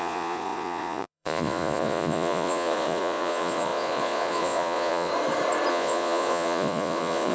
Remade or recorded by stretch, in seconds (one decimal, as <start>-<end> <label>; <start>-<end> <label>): 0.0-5.1 remade; 5.1-5.7 recorded; 5.7-7.3 remade